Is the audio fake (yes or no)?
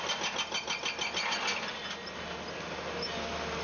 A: no